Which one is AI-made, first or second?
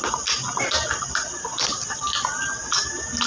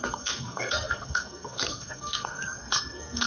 second